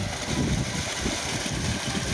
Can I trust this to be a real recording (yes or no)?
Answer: yes